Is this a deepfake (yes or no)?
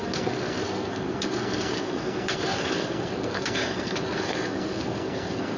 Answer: yes